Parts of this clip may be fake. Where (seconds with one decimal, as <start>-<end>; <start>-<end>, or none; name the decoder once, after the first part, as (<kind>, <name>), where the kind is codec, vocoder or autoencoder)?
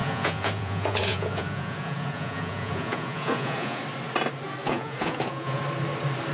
0.0-3.8 (vocoder, Vocos); 4.6-5.6